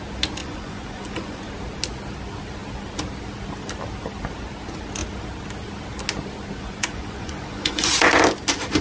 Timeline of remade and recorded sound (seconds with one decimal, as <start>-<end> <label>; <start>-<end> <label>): 0.0-0.4 recorded; 0.4-1.5 remade; 1.5-6.6 recorded; 6.6-7.9 remade; 7.9-8.8 recorded